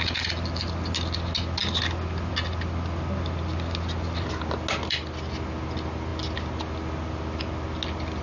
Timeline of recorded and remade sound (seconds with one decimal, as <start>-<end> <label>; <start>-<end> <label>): 0.0-8.2 recorded